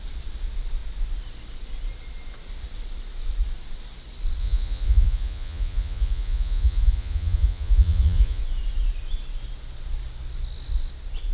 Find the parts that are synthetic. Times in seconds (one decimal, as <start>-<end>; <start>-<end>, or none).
4.4-8.4